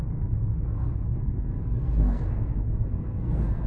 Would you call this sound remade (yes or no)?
yes